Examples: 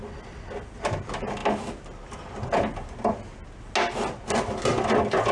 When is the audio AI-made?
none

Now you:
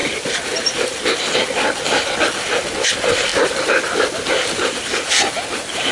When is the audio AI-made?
0.0-2.7 (vocoder, BigVGAN v2); 3.3-5.3